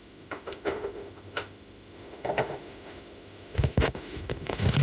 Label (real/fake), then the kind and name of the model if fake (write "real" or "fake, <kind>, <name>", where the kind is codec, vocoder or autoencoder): fake, autoencoder, DAC-VAE